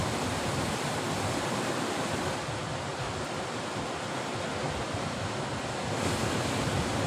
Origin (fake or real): real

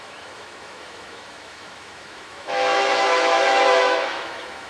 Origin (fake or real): fake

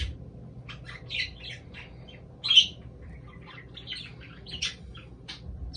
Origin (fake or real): real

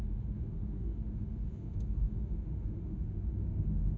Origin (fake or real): fake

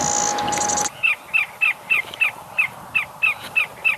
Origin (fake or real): real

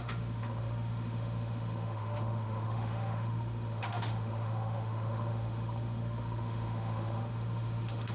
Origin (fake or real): fake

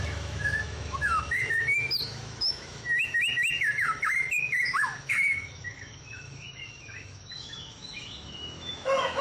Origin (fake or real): fake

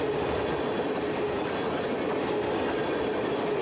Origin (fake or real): real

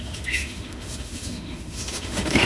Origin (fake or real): fake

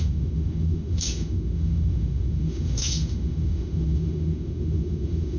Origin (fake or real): fake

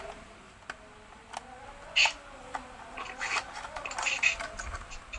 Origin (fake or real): real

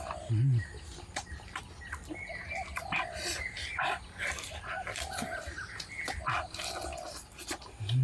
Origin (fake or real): real